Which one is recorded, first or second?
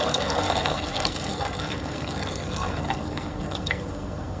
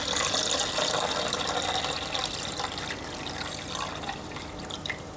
second